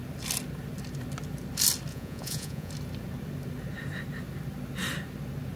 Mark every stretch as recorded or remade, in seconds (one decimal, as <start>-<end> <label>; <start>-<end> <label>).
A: 0.0-1.9 recorded; 1.9-2.7 remade; 2.7-5.6 recorded